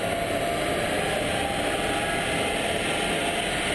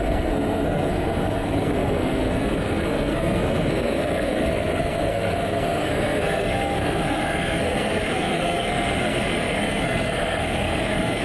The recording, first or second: first